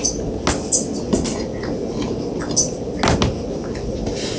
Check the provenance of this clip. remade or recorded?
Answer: recorded